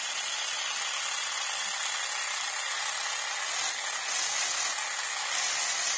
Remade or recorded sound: recorded